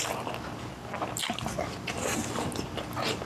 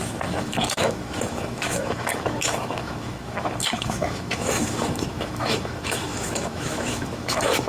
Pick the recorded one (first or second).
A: first